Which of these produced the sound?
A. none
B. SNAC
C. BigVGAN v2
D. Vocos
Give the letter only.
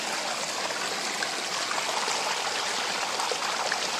A